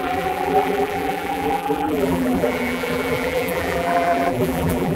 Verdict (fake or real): fake